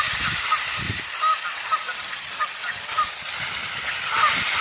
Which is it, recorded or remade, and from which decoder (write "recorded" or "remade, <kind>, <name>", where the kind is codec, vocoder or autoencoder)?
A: remade, vocoder, BigVGAN v2